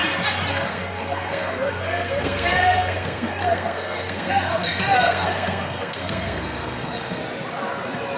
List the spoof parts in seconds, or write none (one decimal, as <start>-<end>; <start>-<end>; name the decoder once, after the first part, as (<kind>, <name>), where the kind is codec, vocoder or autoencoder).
0.5-7.2 (codec, SNAC)

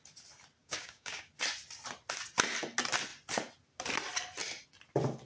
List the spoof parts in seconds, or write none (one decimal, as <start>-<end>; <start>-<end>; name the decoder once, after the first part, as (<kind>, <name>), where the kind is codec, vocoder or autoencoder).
0.6-1.3 (codec, DAC)

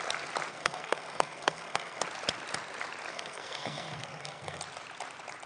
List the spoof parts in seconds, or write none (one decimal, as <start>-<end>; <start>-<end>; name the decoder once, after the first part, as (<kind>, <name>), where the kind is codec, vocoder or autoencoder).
0.5-2.0 (codec, SNAC); 3.1-4.6

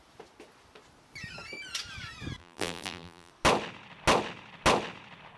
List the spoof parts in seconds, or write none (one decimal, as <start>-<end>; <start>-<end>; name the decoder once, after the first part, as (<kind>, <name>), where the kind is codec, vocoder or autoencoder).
2.4-3.3 (vocoder, BigVGAN v2)